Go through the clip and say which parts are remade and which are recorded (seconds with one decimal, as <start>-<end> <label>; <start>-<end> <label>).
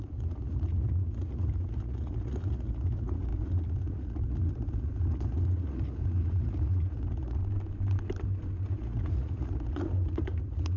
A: 0.0-7.4 remade; 7.4-8.7 recorded; 8.7-10.8 remade